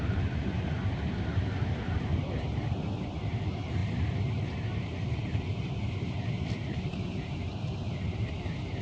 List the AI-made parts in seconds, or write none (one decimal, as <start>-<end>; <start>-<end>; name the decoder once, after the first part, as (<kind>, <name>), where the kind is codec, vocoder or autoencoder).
0.0-8.8 (vocoder, BigVGAN v2)